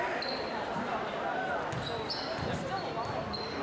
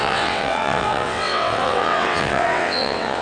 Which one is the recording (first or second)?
first